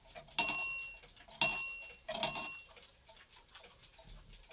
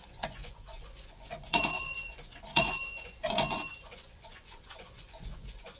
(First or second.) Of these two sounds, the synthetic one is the second